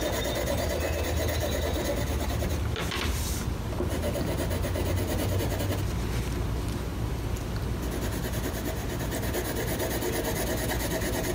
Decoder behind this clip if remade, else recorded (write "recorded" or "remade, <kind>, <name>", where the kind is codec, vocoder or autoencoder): recorded